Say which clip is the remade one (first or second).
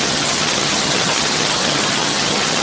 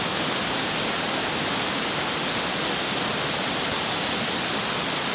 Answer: first